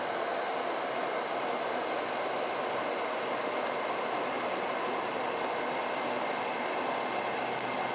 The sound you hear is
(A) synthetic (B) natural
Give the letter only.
B